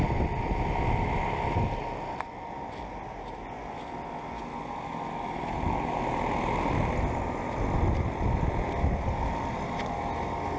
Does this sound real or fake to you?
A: real